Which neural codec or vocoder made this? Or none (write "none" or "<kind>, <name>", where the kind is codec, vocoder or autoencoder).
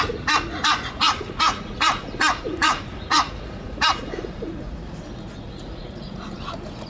vocoder, Vocos